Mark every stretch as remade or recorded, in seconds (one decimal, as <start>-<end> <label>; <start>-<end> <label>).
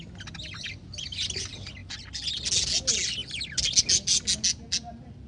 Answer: 0.0-5.3 recorded